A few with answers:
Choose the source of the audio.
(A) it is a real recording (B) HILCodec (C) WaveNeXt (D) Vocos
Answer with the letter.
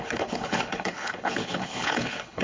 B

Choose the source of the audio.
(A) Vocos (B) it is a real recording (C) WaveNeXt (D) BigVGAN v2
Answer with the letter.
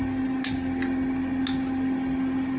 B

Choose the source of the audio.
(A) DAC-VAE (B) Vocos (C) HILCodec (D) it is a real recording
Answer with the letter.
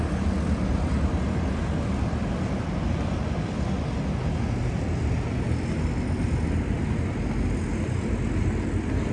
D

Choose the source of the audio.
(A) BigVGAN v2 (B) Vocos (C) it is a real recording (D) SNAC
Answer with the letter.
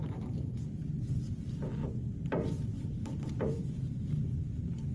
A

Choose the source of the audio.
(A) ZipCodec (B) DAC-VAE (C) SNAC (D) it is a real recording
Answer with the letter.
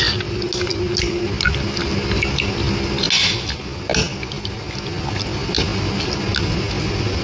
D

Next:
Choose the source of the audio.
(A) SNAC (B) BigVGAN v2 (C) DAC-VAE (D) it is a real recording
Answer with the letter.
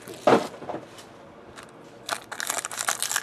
D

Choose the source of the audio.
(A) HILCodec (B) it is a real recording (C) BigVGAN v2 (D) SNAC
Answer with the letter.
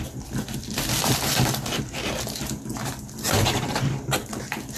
C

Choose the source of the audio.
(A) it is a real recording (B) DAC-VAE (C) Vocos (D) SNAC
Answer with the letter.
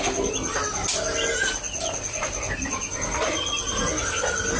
A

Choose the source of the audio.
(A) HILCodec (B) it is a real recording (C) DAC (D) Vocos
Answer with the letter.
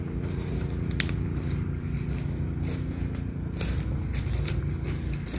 B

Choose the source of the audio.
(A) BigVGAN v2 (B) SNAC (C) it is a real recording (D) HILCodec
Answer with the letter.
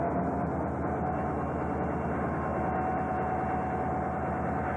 C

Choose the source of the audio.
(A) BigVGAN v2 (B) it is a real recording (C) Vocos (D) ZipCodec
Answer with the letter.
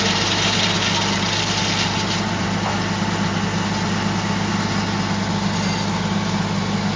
B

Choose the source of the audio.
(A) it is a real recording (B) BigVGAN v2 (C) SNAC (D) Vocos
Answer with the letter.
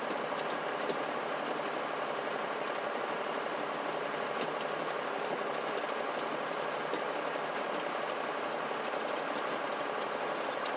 A